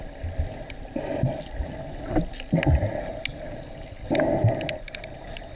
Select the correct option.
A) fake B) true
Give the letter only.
B